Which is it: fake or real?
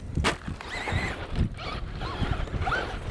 real